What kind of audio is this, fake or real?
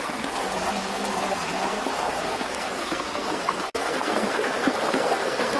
fake